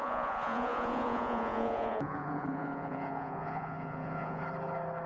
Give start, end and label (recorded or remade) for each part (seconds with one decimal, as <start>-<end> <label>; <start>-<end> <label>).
0.0-4.4 remade; 4.4-5.1 recorded

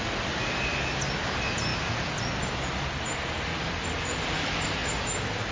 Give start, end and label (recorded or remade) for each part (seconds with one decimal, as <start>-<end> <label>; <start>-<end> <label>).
0.0-5.5 recorded

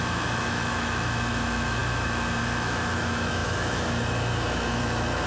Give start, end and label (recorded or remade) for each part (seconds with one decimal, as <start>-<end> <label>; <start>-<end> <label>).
0.0-5.3 remade

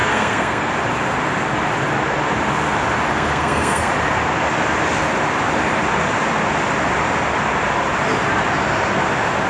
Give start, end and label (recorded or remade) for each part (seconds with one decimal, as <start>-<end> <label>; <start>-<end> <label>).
0.0-0.7 remade; 0.7-3.1 recorded; 3.1-3.9 remade; 3.9-9.5 recorded